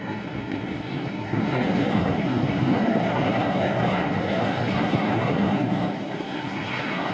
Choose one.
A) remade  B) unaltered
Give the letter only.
A